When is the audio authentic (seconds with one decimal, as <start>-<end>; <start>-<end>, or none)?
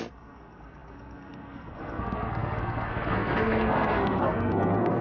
none